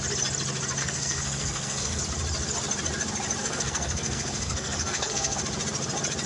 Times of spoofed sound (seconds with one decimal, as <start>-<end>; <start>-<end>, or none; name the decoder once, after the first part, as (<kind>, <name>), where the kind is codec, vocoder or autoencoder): 0.8-2.0 (codec, SNAC); 3.4-5.4